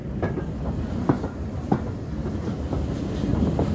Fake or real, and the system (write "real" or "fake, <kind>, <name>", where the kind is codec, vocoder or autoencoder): real